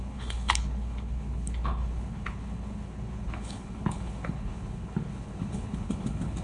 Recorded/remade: remade